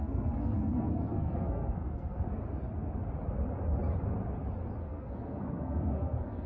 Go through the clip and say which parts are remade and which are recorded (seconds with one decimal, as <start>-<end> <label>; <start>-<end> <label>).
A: 0.0-2.4 remade; 2.4-4.8 recorded; 4.8-6.5 remade